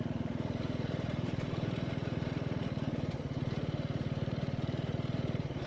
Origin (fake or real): fake